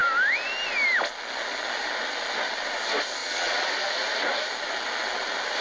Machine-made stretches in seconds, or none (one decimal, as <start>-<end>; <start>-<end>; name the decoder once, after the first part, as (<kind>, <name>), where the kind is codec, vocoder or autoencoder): 3.2-3.7 (vocoder, Vocos)